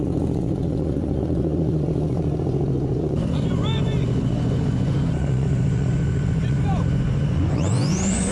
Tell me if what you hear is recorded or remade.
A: remade